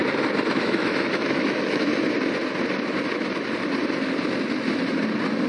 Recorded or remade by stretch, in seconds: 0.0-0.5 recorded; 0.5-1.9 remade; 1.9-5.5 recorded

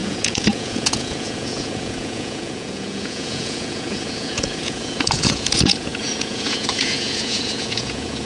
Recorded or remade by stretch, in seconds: 0.0-8.3 remade

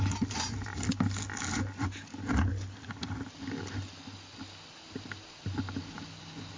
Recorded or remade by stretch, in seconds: 0.0-6.6 recorded

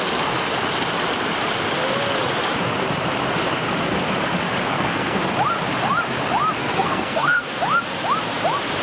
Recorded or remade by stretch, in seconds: 0.0-4.7 recorded; 4.7-5.2 remade; 5.2-6.6 recorded; 6.6-7.6 remade; 7.6-8.8 recorded

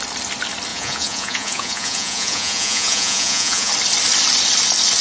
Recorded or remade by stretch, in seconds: 0.0-0.7 recorded; 0.7-3.7 remade; 3.7-5.0 recorded